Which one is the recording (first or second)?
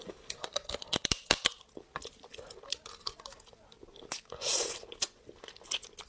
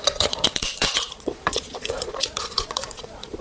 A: first